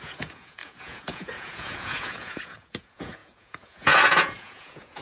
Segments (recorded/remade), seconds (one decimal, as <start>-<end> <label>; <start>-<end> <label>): 0.0-5.0 remade